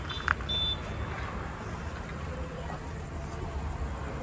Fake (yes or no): no